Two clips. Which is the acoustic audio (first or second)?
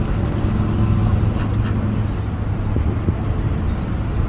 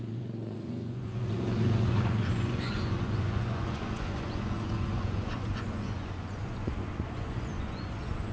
first